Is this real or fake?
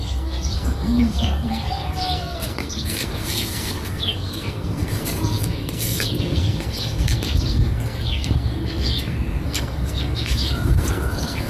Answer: fake